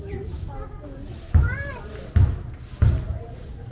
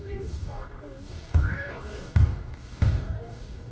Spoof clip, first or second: second